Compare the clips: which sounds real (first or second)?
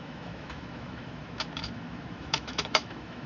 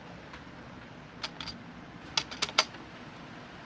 second